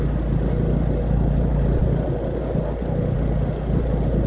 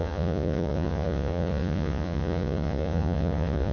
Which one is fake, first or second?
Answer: second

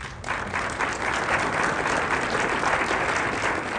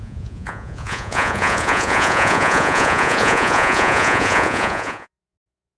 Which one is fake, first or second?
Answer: second